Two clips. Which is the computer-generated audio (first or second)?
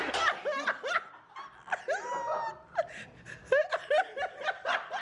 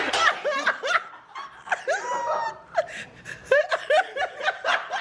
second